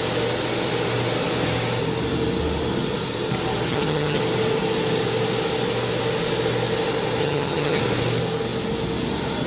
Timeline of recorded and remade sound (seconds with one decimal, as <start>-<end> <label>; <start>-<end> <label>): 0.0-3.7 recorded; 3.7-4.2 remade; 4.2-7.2 recorded; 7.2-7.8 remade; 7.8-9.5 recorded